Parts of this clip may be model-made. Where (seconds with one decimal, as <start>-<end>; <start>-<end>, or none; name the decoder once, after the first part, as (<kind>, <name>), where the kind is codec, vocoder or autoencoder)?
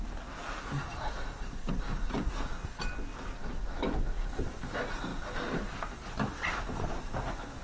0.4-2.3 (vocoder, BigVGAN v2); 3.1-4.6